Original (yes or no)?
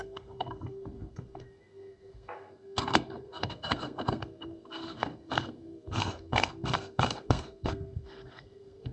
no